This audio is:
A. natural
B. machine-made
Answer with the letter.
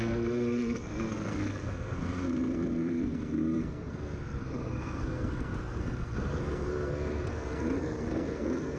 B